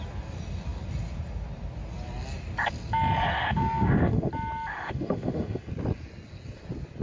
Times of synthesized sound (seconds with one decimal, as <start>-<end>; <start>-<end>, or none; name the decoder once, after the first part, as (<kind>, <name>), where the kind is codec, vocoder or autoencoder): 3.3-4.3 (autoencoder, DAC-VAE); 4.7-5.7

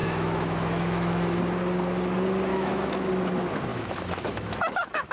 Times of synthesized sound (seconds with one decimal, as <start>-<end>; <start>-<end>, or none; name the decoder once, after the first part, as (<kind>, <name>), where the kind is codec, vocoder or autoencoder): 0.0-1.4 (autoencoder, DAC-VAE); 2.5-3.1; 3.7-5.1